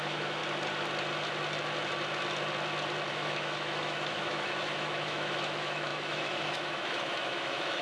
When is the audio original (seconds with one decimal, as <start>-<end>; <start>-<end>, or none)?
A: 0.4-3.1